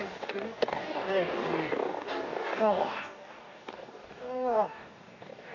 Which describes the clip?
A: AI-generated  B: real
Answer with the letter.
A